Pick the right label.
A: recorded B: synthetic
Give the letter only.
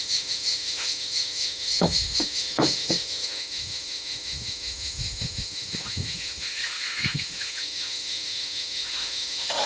B